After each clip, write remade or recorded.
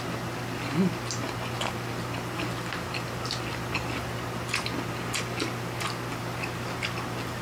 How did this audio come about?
recorded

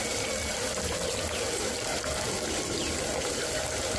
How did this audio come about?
recorded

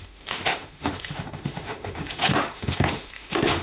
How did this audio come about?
remade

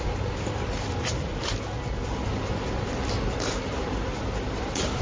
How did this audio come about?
recorded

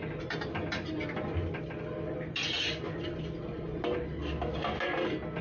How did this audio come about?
recorded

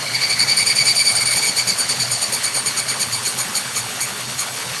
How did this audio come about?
remade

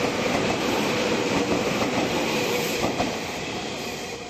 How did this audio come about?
remade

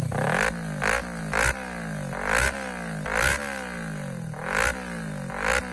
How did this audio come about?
recorded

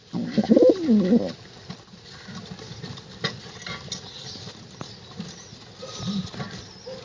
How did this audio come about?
recorded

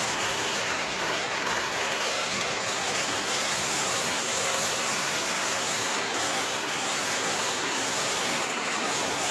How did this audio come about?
remade